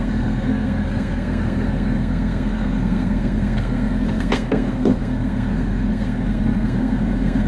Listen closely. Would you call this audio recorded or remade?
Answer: remade